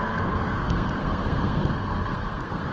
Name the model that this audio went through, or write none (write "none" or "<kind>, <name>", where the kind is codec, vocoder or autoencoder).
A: codec, SNAC